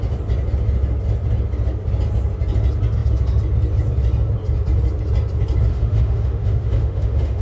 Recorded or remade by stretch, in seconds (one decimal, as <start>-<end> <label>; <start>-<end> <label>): 0.0-5.7 recorded; 5.7-7.4 remade

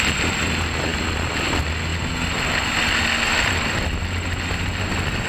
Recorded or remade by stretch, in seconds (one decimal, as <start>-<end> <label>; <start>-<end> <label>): 0.0-5.3 recorded